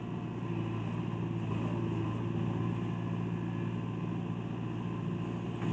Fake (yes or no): no